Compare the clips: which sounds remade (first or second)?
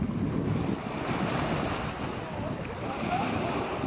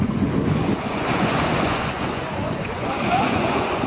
second